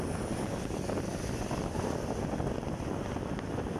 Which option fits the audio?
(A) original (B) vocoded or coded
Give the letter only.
A